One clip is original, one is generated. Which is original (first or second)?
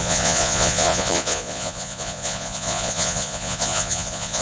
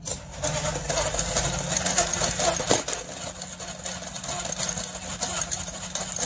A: second